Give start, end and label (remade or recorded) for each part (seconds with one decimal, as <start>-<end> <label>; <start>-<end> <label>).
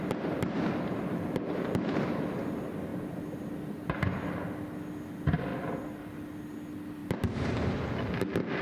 0.0-8.6 recorded